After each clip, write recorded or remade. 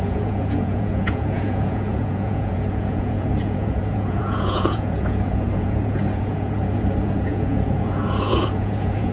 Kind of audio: remade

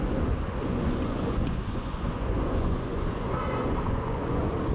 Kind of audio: remade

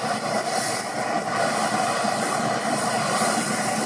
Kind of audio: recorded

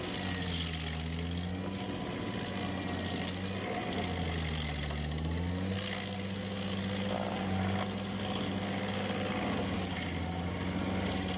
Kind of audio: recorded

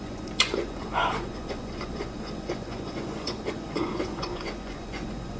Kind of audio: remade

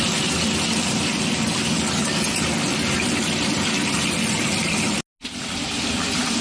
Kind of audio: recorded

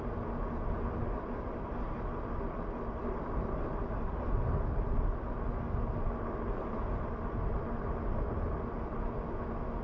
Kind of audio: recorded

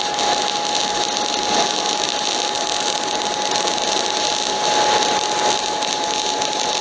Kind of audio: recorded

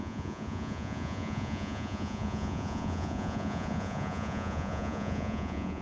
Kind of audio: remade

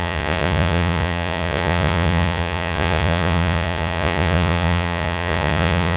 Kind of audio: remade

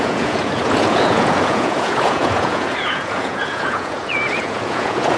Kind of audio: remade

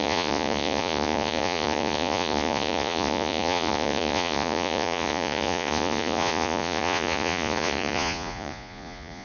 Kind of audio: remade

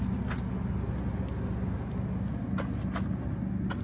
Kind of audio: recorded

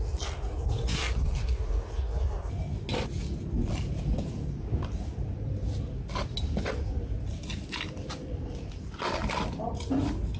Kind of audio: recorded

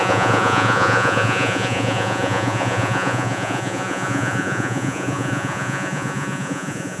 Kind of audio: remade